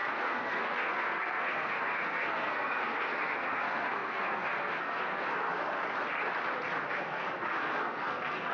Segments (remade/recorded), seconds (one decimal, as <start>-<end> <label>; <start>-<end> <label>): 0.0-5.8 remade; 5.8-6.9 recorded; 6.9-8.5 remade